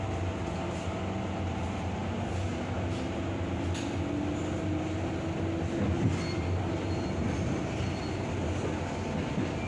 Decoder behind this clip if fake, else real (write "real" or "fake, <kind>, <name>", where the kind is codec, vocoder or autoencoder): real